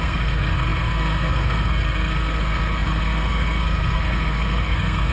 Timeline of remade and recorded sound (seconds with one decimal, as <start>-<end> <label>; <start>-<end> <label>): 0.0-5.1 remade